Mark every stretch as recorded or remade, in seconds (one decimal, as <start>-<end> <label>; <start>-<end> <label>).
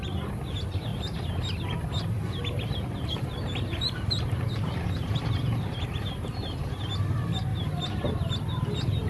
0.0-0.9 recorded; 0.9-5.2 remade; 5.2-7.5 recorded; 7.5-8.1 remade; 8.1-9.1 recorded